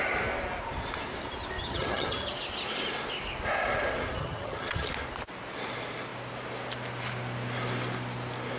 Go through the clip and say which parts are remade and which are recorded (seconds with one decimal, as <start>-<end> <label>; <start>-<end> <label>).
0.0-1.6 recorded; 1.6-2.3 remade; 2.3-4.2 recorded; 4.2-4.9 remade; 4.9-8.6 recorded